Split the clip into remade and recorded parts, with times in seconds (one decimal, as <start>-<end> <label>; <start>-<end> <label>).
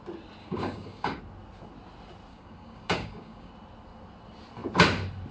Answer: 0.0-0.4 recorded; 0.4-1.2 remade; 1.2-2.3 recorded; 2.3-3.5 remade; 3.5-5.3 recorded